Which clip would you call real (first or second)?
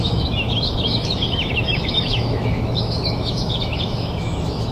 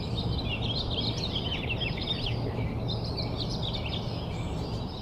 second